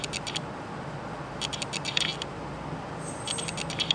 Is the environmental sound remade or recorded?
recorded